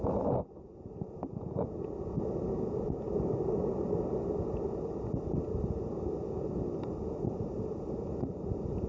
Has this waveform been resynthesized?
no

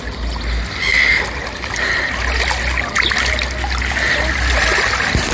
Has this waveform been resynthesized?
no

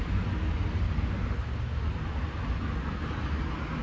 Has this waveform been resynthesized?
no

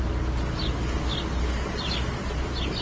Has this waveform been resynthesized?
no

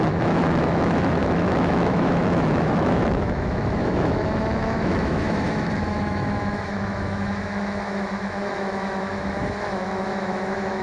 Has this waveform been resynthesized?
yes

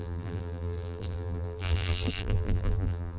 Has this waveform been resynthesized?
yes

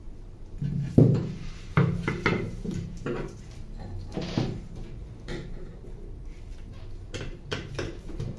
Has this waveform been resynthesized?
yes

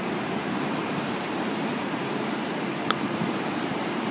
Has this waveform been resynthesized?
yes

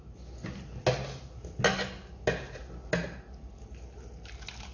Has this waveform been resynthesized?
no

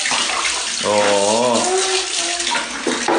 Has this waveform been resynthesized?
no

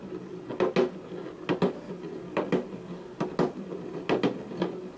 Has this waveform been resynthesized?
no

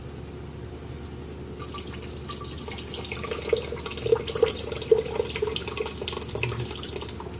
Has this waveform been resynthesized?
no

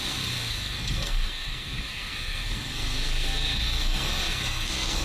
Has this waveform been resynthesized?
yes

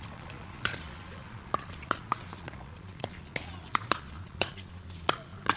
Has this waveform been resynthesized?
yes